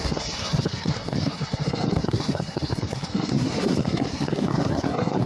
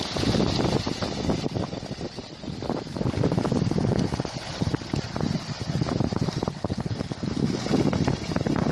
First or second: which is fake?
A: first